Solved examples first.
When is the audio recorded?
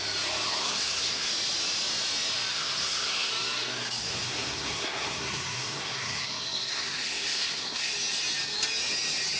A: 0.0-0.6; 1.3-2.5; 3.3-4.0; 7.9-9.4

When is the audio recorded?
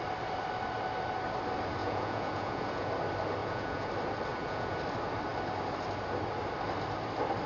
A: 0.0-1.8; 2.9-3.4; 3.9-4.3; 4.8-7.5